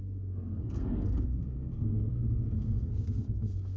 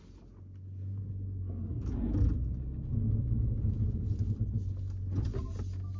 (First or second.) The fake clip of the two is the first